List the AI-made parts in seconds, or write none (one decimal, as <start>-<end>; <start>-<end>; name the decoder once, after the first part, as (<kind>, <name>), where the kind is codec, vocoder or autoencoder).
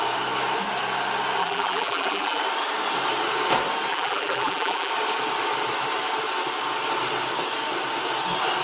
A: 1.4-2.4 (vocoder, BigVGAN v2); 3.9-4.9